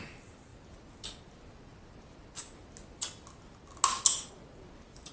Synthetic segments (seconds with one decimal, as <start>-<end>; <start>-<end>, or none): none